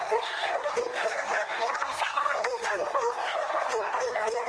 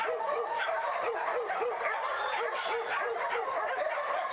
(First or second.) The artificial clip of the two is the first